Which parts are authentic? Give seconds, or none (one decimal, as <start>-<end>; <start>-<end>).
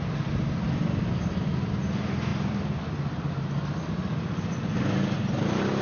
0.0-5.8